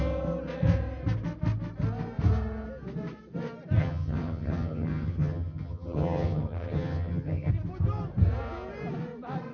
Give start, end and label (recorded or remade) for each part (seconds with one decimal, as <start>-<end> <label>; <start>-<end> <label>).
0.0-3.8 recorded; 3.8-7.5 remade; 7.5-9.5 recorded